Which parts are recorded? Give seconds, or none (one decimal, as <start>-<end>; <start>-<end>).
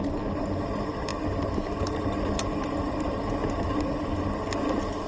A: 0.0-5.1